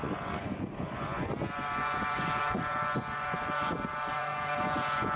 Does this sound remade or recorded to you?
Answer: remade